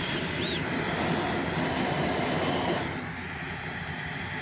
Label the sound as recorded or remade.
recorded